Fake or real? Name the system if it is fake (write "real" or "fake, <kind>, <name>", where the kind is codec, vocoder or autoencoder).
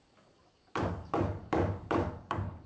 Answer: fake, codec, DAC